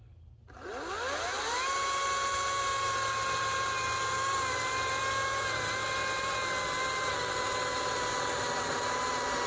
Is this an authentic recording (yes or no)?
yes